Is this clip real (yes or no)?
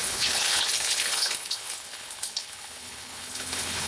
no